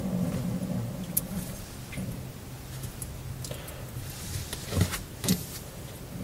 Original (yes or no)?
yes